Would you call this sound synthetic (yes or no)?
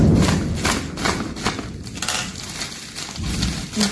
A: no